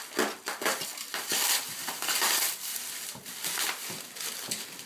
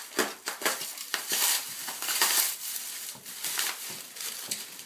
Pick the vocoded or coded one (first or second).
second